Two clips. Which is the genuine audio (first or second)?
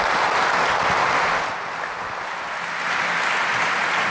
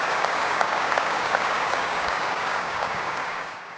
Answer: first